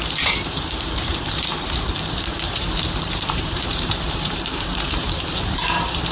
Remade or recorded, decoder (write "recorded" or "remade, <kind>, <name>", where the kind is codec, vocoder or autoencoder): remade, vocoder, BigVGAN v2